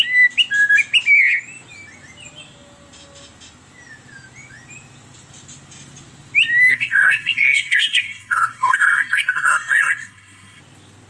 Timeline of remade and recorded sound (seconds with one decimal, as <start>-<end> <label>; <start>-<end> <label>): 0.0-6.7 recorded; 6.7-10.6 remade; 10.6-11.1 recorded